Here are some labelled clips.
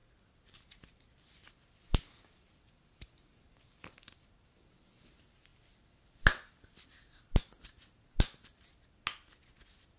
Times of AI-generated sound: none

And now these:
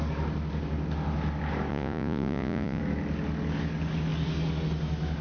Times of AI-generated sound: 1.7-2.8 (vocoder, Vocos)

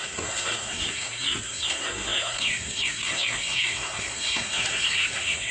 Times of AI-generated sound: 0.0-5.5 (codec, SNAC)

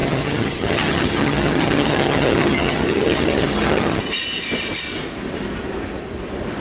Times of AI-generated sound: 0.0-4.0 (vocoder, HiFi-GAN)

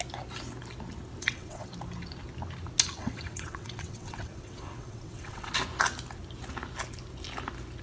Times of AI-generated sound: 1.2-1.7 (vocoder, WaveNeXt); 3.0-5.5

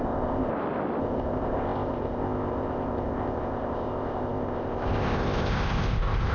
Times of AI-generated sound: 0.0-0.5 (codec, ZipCodec); 1.0-6.3

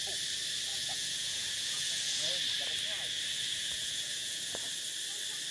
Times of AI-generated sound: 0.7-2.3 (vocoder, Vocos); 3.3-4.7